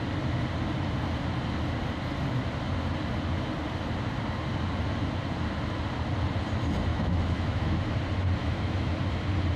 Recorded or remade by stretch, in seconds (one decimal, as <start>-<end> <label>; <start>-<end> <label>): 0.0-6.9 recorded; 6.9-7.8 remade; 7.8-8.4 recorded; 8.4-8.9 remade; 8.9-9.6 recorded